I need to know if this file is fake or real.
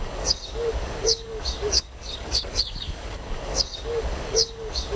fake